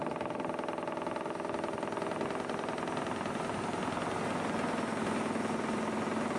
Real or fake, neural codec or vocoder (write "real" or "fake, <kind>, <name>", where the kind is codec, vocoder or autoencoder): real